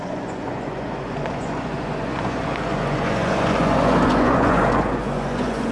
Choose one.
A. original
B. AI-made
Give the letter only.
B